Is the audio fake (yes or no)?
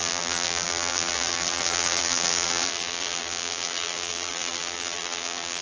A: yes